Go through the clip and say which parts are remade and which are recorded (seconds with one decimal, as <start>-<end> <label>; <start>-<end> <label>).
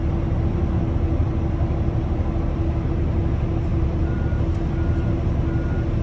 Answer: 0.0-1.2 recorded; 1.2-3.2 remade; 3.2-3.7 recorded; 3.7-4.3 remade; 4.3-6.0 recorded